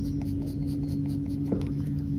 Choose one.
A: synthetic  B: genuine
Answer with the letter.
A